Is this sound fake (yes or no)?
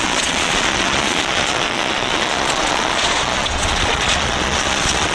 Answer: yes